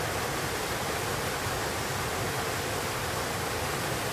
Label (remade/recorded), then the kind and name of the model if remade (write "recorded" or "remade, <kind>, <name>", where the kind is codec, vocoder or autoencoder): recorded